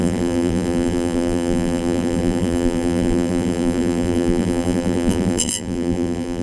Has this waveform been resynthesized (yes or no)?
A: yes